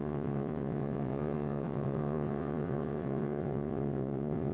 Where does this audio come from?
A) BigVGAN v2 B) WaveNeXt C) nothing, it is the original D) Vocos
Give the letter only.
B